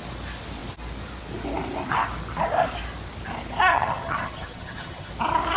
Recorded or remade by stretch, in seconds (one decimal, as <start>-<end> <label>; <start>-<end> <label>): 0.0-3.7 recorded; 3.7-5.1 remade; 5.1-5.6 recorded